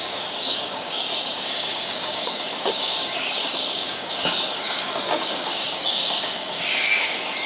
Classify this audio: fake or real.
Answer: fake